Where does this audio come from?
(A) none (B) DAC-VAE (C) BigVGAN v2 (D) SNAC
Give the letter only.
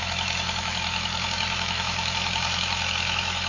B